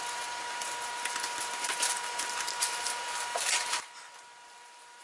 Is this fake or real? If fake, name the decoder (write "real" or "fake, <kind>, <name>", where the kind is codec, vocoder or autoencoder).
real